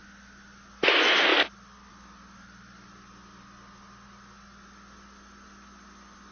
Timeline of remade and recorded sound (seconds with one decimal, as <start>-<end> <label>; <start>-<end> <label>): 0.0-6.3 recorded